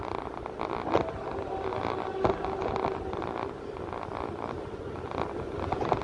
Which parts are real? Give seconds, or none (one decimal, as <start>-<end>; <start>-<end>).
0.0-6.0